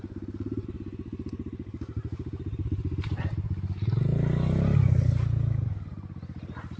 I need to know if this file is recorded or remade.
recorded